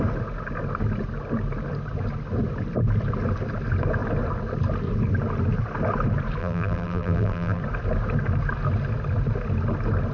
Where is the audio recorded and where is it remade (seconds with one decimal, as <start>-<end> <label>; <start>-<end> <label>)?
0.0-6.4 recorded; 6.4-7.6 remade; 7.6-10.1 recorded